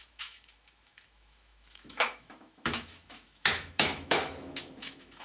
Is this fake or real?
fake